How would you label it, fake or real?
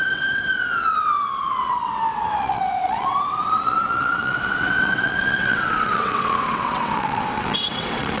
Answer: fake